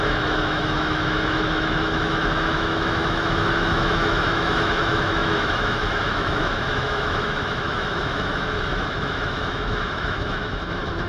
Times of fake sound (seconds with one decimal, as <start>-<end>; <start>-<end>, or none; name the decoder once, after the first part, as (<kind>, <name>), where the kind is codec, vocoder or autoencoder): 0.0-11.1 (autoencoder, DAC-VAE)